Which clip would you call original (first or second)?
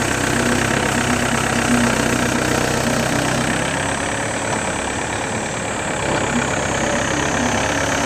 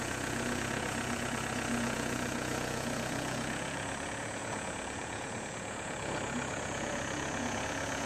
first